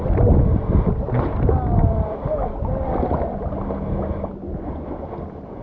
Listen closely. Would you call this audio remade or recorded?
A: recorded